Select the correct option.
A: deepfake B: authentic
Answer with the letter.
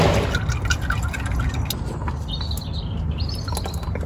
B